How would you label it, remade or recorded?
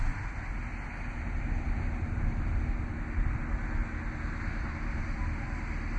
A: recorded